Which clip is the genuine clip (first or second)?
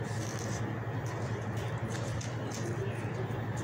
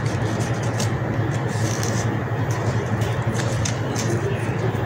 first